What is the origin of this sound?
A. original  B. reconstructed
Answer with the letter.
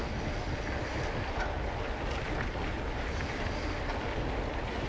A